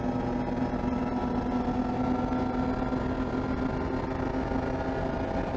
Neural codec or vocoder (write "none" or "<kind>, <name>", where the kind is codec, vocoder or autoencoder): none